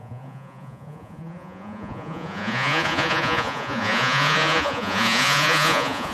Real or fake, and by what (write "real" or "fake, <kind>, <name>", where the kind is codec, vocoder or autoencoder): fake, vocoder, Vocos